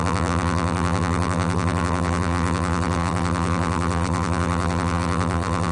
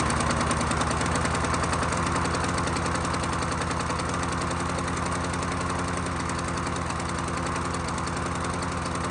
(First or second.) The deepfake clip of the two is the first